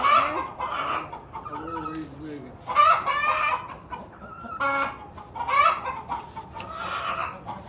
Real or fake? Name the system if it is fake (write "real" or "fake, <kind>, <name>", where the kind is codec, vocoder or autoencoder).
real